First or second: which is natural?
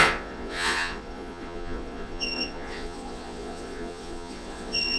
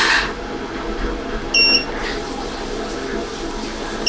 second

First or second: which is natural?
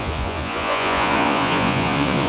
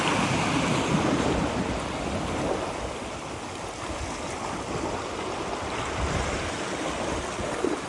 second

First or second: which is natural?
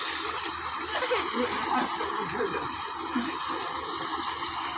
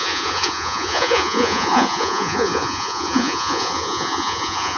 first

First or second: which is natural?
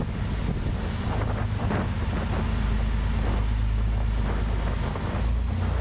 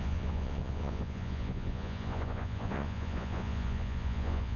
first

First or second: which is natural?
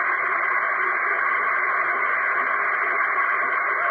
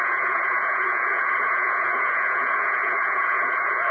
first